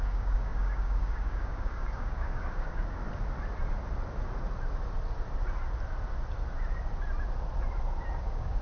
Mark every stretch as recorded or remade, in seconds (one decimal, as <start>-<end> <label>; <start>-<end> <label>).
0.0-3.0 remade; 3.0-8.2 recorded; 8.2-8.6 remade